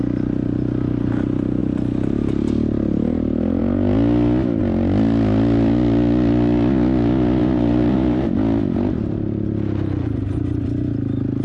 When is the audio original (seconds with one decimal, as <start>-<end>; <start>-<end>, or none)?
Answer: 0.0-7.4; 8.3-11.4